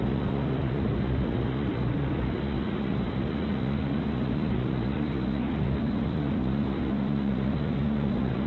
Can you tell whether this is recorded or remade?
remade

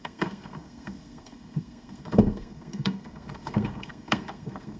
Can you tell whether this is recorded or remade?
remade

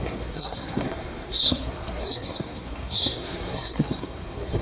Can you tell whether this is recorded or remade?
remade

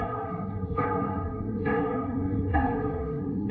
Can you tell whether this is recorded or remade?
remade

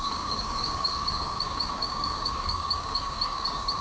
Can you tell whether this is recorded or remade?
remade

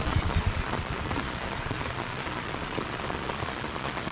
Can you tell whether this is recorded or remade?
remade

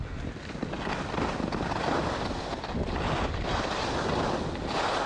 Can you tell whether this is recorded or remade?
recorded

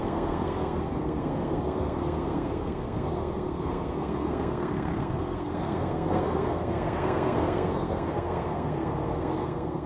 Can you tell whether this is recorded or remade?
remade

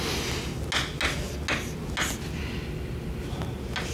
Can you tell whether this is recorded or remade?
recorded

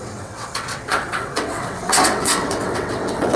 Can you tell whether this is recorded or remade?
remade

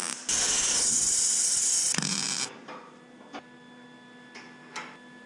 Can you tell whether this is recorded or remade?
recorded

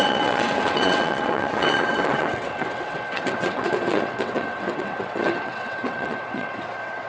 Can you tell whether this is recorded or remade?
remade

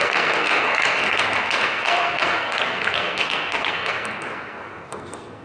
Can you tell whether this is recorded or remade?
remade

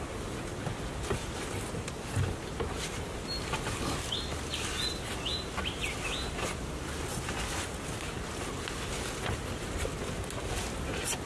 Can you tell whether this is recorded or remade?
recorded